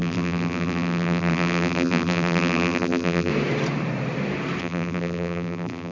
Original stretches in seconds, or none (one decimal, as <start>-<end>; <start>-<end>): 3.3-4.6